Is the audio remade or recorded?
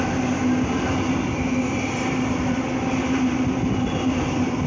recorded